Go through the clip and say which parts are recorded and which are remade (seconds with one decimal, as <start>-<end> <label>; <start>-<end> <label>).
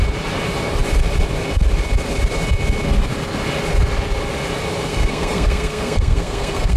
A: 0.0-4.9 recorded; 4.9-6.8 remade